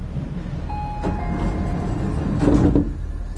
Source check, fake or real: real